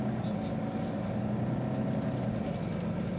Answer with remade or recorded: recorded